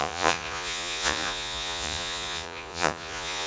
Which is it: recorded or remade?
remade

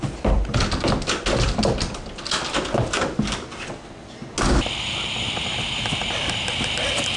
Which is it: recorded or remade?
recorded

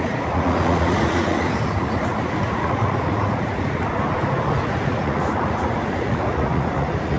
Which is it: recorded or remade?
remade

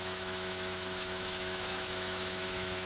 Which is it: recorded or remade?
remade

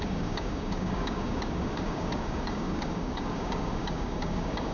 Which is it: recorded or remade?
remade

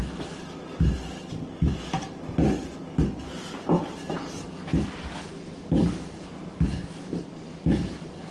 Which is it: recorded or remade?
recorded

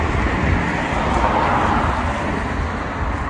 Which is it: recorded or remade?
recorded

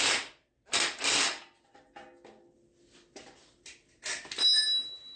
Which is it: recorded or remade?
recorded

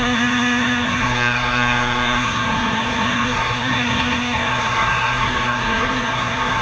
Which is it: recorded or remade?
remade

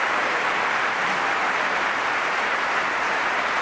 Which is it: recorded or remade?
remade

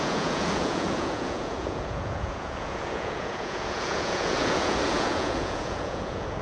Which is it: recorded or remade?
remade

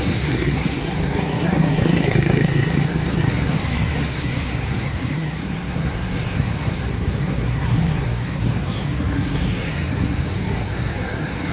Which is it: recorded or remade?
remade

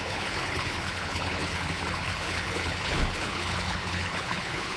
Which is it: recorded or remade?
remade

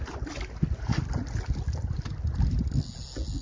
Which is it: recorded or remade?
recorded